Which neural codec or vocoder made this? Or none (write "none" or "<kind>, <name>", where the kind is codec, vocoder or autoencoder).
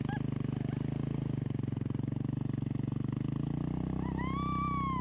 none